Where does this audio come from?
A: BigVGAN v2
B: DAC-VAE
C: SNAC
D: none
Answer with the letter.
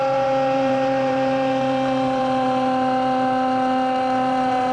A